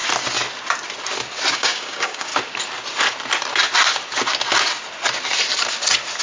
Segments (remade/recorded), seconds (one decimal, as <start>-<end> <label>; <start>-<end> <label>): 0.0-1.5 recorded; 1.5-2.3 remade; 2.3-6.2 recorded